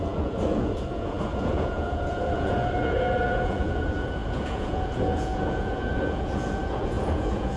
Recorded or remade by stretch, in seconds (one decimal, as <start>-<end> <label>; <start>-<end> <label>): 0.0-7.6 remade